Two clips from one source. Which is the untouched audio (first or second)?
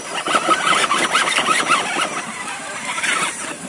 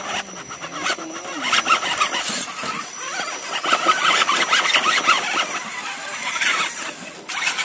second